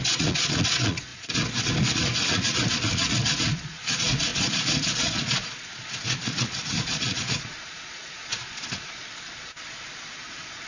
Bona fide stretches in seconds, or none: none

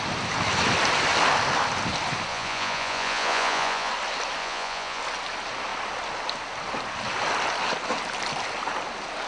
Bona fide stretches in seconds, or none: 0.0-2.3; 3.9-4.4; 5.0-9.3

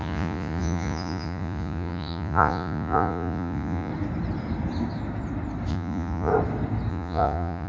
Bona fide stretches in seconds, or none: 3.9-5.7; 6.3-6.9

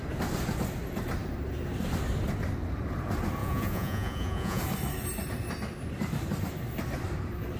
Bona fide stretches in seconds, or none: 0.0-3.4; 4.6-7.6

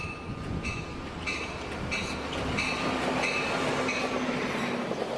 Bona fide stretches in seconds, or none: 0.8-5.2

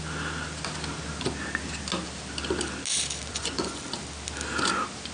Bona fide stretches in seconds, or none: 0.0-3.3; 3.8-5.1

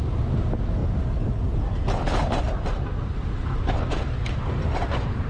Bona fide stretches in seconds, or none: 0.0-5.3